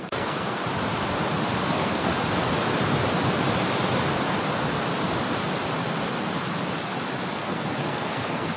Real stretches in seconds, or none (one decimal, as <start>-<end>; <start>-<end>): 0.6-1.6; 2.1-7.3